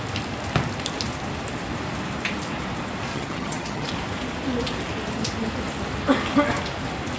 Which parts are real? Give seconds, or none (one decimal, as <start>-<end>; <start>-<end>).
0.0-3.1; 3.9-7.2